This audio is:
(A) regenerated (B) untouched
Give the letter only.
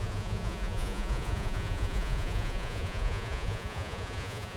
A